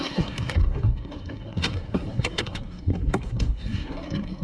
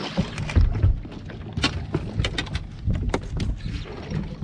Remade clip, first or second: first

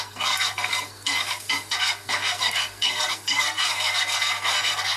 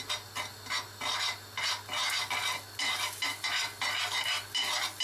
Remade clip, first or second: first